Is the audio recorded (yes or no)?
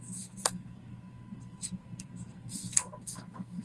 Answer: no